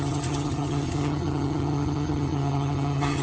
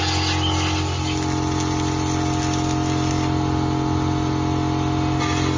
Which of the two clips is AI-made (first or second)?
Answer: first